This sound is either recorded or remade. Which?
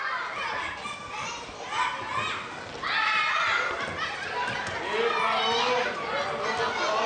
recorded